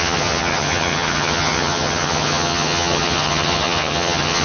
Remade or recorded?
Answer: remade